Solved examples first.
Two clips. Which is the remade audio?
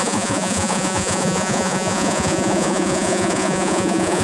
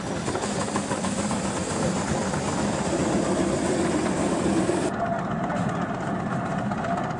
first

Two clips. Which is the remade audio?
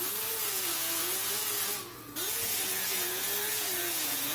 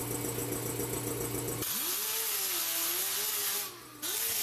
first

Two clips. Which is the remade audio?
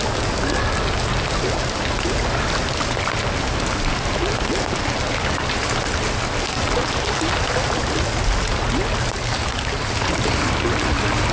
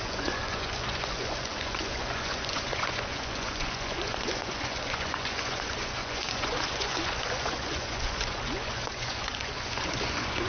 second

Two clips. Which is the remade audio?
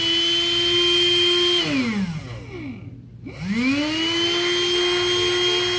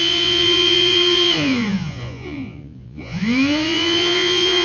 second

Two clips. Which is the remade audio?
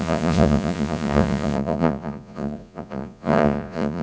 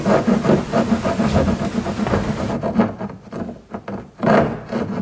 first